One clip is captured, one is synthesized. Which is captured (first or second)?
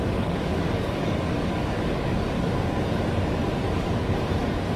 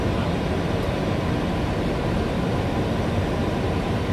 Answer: second